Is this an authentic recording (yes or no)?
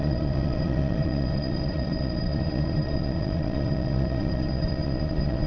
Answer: no